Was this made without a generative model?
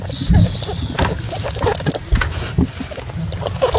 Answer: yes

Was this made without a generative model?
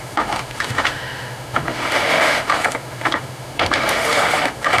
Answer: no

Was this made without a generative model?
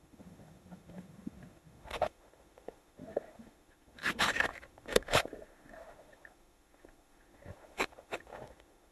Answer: no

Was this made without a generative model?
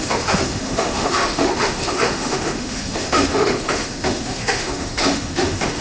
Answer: no